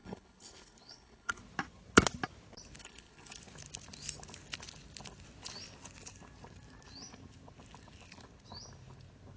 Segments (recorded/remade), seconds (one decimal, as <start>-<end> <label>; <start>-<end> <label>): 0.0-1.4 remade; 1.4-2.8 recorded; 2.8-3.4 remade; 3.4-9.4 recorded